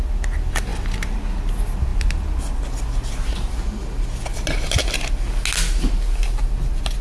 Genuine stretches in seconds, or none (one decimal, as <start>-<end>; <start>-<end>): 0.0-4.3; 4.8-7.0